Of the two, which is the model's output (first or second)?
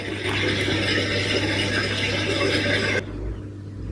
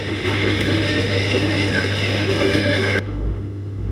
second